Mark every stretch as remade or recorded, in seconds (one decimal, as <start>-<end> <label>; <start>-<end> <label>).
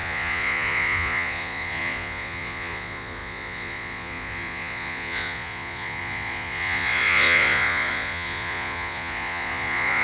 0.0-10.0 remade